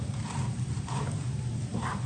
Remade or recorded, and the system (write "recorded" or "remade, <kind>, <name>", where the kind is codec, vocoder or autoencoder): remade, vocoder, BigVGAN v2